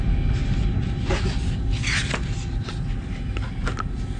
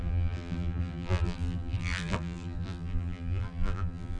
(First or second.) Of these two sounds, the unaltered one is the first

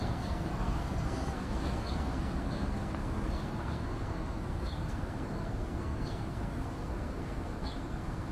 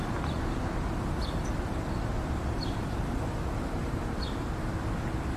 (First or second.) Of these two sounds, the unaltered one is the second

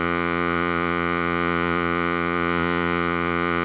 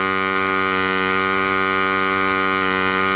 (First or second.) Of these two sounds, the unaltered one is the second